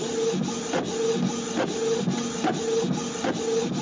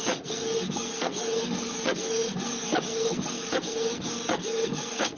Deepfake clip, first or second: second